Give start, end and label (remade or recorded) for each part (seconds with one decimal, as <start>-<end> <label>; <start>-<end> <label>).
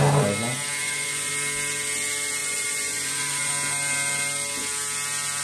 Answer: 0.0-0.8 recorded; 0.8-1.3 remade; 1.3-2.4 recorded; 2.4-3.5 remade; 3.5-5.4 recorded